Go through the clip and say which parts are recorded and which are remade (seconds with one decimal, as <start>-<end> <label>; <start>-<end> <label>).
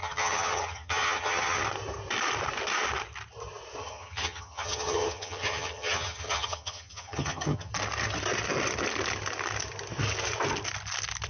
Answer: 0.0-1.6 remade; 1.6-3.8 recorded; 3.8-7.7 remade; 7.7-11.3 recorded